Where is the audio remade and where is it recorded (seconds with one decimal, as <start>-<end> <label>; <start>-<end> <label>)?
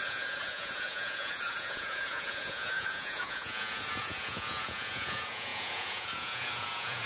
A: 0.0-7.1 remade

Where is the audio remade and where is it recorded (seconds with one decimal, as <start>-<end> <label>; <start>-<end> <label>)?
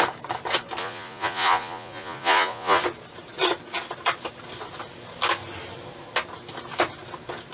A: 0.0-0.8 recorded; 0.8-2.8 remade; 2.8-7.5 recorded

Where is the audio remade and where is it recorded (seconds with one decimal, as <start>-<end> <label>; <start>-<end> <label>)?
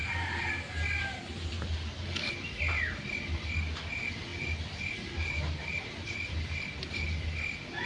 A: 0.0-7.9 recorded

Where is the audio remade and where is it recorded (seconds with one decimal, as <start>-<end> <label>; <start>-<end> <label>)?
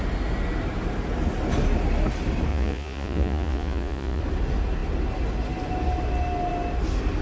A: 0.0-2.5 recorded; 2.5-4.2 remade; 4.2-7.2 recorded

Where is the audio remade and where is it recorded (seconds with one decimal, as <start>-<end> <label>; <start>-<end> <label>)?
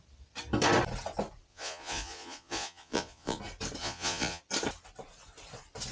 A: 0.0-1.5 recorded; 1.5-3.4 remade; 3.4-3.8 recorded; 3.8-4.4 remade; 4.4-5.9 recorded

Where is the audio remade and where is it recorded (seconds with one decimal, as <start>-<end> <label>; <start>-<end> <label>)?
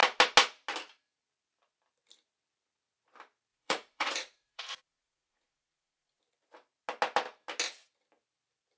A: 0.0-3.5 recorded; 3.5-6.2 remade; 6.2-8.8 recorded